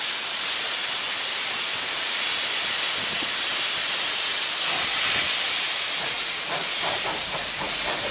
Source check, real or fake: real